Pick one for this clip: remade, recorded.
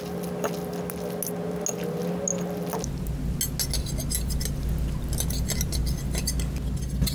recorded